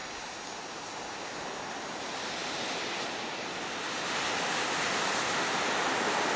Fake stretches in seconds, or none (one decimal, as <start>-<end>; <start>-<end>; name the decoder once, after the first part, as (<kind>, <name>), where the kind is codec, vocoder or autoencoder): 2.4-3.1 (vocoder, BigVGAN v2)